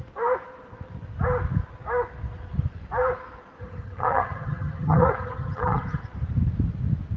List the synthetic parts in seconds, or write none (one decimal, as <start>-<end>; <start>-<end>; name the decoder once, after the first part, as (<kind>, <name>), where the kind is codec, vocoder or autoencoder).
3.6-6.0 (vocoder, HiFi-GAN)